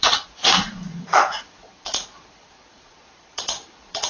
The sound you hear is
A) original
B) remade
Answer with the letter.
B